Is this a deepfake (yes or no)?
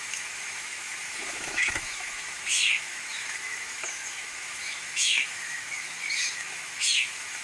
yes